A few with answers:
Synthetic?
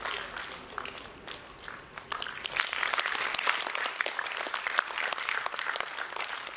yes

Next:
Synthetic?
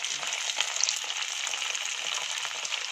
no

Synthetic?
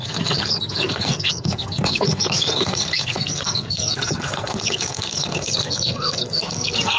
yes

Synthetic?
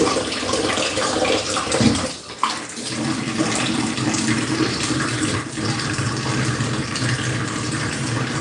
yes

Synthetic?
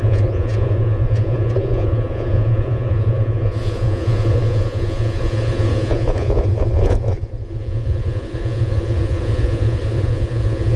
yes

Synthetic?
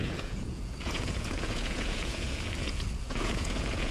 yes